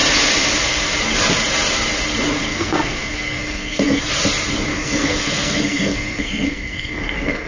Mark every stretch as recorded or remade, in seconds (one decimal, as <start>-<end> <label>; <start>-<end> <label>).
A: 0.0-2.5 recorded; 2.5-4.1 remade; 4.1-4.7 recorded; 4.7-7.5 remade